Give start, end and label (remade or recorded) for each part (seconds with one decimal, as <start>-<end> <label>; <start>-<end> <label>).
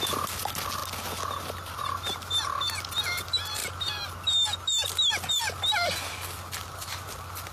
0.0-7.5 recorded